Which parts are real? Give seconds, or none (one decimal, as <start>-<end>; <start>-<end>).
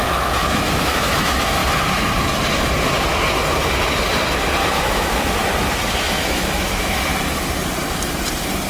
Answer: 1.6-4.6; 5.4-5.9; 7.1-8.7